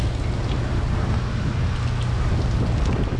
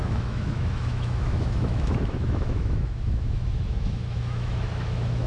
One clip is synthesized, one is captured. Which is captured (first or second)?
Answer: first